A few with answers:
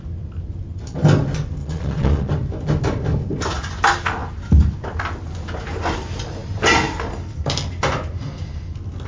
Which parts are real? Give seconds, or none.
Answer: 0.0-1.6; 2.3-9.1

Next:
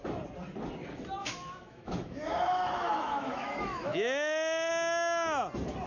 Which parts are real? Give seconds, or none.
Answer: 0.0-1.2; 4.7-5.9

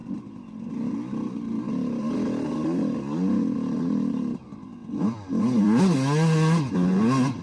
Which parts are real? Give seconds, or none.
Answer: 0.0-4.8; 5.8-7.4

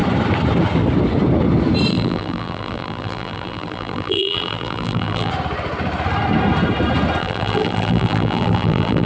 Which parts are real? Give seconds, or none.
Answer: 0.0-1.9; 5.3-7.2

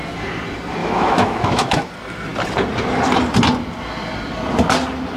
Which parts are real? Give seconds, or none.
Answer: 0.0-0.8; 1.9-5.2

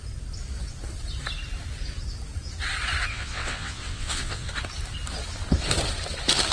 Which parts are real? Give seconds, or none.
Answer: 0.0-3.1; 4.5-6.5

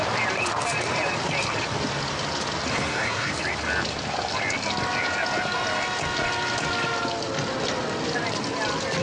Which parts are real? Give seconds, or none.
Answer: 0.0-2.7; 3.3-9.0